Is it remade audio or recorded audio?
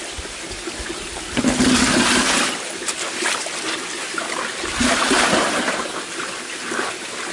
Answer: recorded